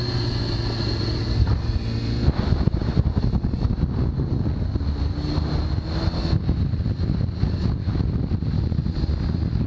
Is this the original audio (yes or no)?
yes